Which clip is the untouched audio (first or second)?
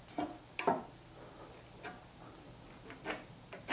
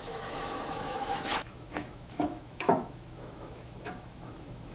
first